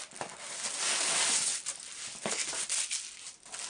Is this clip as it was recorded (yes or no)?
yes